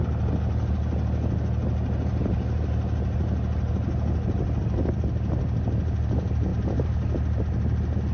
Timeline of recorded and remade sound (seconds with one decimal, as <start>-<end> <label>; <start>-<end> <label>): 0.0-8.1 recorded